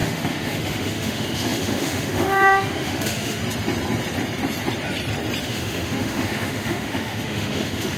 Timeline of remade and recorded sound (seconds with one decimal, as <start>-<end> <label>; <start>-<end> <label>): 0.0-3.4 remade; 3.4-5.4 recorded; 5.4-8.0 remade